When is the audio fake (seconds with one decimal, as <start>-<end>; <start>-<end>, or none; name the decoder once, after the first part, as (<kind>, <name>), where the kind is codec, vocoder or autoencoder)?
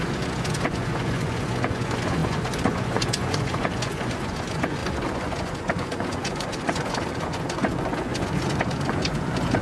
0.0-9.6 (vocoder, Vocos)